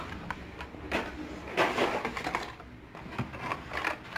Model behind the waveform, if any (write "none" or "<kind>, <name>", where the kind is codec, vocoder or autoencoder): none